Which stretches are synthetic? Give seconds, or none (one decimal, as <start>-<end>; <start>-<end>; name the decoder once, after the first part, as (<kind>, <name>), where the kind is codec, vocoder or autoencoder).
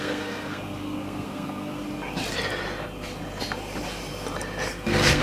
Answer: 0.0-1.8 (codec, SNAC); 4.7-5.2